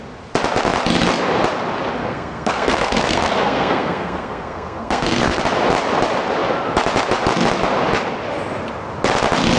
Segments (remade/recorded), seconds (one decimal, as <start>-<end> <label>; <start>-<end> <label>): 0.0-2.0 recorded; 2.0-5.4 remade; 5.4-9.6 recorded